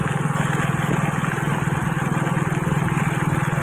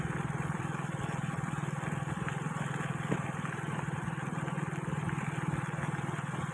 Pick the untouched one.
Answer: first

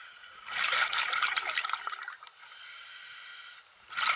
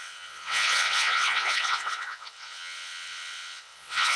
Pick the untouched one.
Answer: first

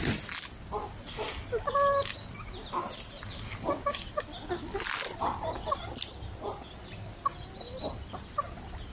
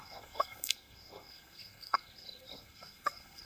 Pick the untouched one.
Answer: first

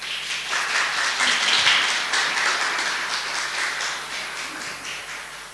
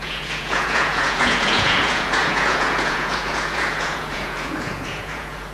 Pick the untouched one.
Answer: first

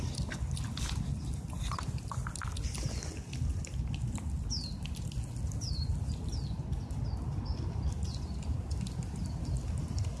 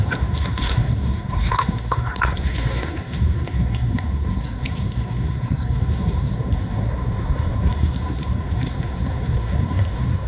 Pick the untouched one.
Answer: first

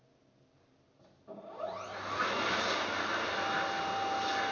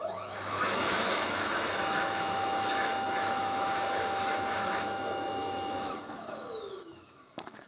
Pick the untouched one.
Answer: first